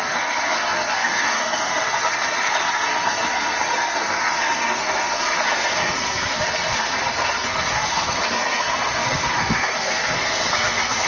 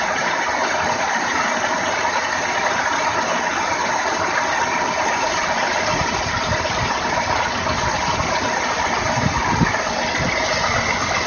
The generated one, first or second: first